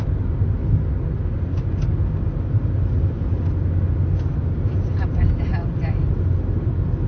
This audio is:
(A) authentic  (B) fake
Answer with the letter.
A